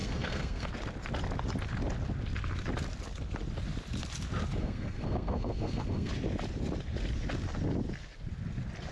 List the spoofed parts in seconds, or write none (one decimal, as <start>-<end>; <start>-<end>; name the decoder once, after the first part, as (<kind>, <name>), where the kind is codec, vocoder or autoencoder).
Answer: 0.0-0.7 (codec, SNAC); 4.6-6.1